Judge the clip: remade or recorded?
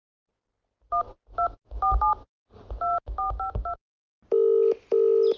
recorded